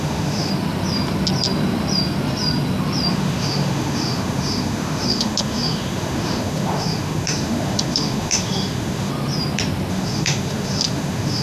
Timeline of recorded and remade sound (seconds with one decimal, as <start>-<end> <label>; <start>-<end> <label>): 0.0-0.5 remade; 0.5-3.1 recorded; 3.1-9.1 remade; 9.1-9.9 recorded; 9.9-11.4 remade